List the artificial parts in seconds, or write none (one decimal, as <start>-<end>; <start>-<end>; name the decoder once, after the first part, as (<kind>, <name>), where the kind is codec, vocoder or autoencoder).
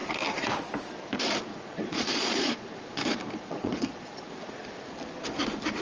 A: 1.5-4.3 (vocoder, Vocos)